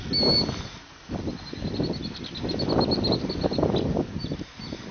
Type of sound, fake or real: real